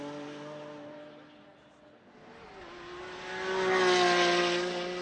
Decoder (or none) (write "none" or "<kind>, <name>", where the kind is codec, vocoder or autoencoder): none